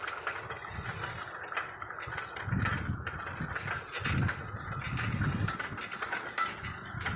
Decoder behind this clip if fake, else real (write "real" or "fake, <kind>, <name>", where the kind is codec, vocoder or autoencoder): real